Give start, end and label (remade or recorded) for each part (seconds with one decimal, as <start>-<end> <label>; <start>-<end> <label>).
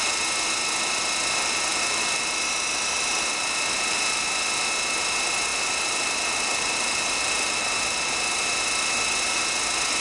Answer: 0.0-5.5 recorded; 5.5-8.1 remade; 8.1-10.0 recorded